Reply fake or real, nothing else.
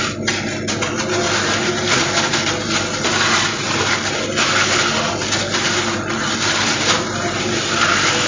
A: real